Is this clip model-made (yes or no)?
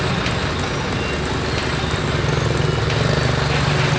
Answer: no